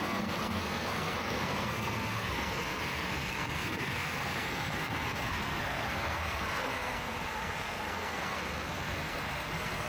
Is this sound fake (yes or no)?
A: yes